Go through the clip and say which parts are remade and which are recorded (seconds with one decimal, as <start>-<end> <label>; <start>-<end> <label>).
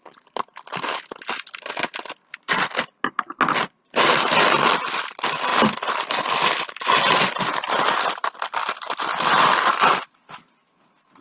0.0-11.2 recorded